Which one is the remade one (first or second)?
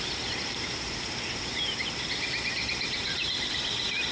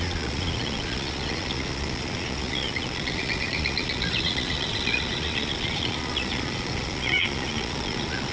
second